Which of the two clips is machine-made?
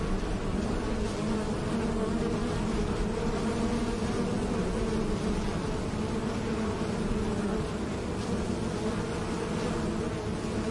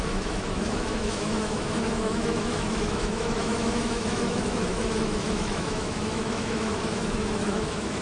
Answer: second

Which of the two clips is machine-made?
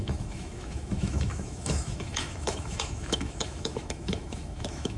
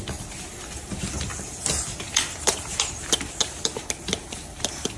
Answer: first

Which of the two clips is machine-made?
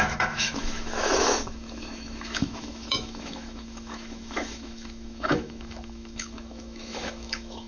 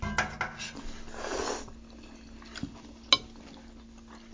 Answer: first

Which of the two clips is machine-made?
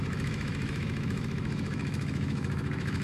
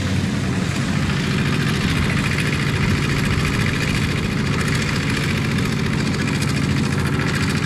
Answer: first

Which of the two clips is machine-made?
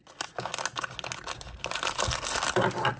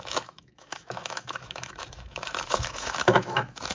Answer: second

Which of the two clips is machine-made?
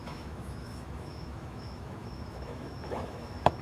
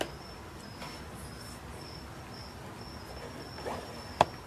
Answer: first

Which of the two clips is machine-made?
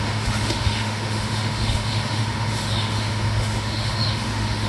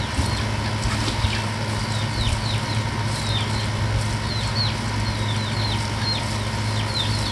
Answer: first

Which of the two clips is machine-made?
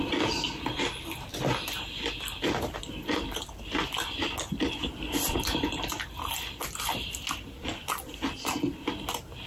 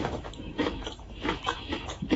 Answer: second